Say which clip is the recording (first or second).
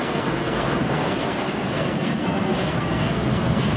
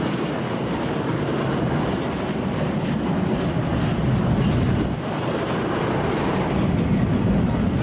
second